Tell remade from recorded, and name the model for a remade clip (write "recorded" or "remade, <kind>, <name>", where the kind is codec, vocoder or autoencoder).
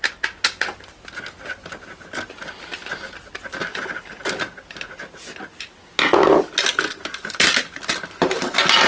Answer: recorded